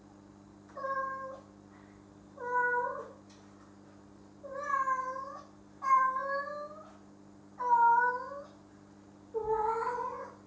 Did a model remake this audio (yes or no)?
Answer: no